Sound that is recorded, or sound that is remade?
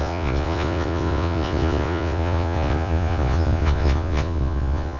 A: remade